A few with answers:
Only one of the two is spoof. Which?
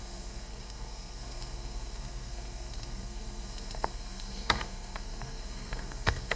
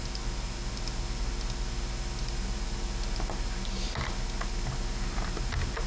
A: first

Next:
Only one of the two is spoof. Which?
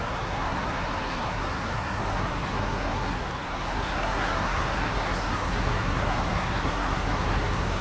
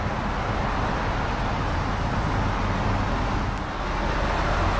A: first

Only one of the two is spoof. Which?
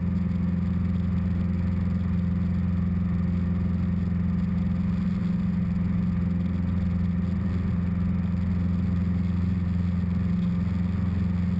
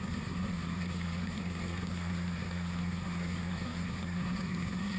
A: second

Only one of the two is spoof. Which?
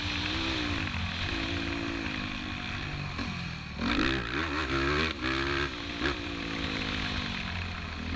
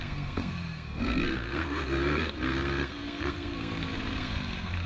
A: second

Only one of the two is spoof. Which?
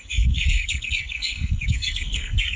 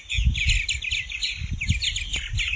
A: first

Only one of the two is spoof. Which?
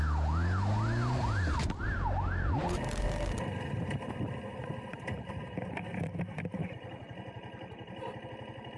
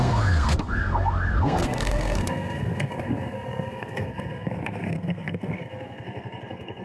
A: second